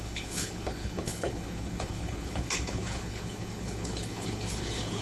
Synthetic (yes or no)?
yes